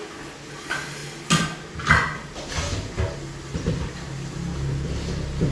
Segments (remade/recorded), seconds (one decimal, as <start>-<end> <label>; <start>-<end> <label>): 0.0-5.5 recorded